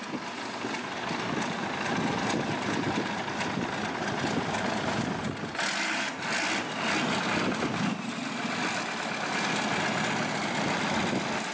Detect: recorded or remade recorded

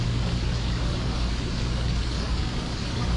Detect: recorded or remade remade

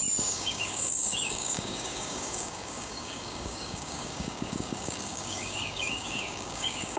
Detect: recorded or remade remade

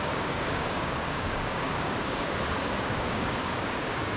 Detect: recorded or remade remade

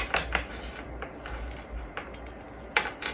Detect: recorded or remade recorded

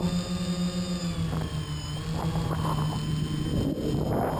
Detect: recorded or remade recorded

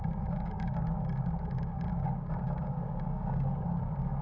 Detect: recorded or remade remade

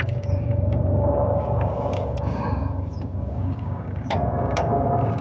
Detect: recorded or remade remade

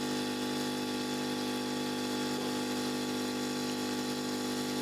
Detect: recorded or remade recorded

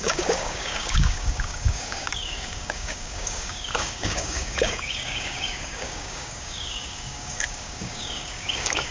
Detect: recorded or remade remade